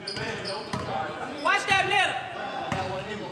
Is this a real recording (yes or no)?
no